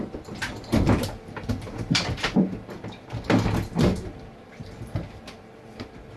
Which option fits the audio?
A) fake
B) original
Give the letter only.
A